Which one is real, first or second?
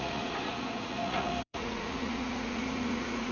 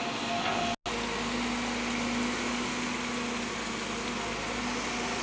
second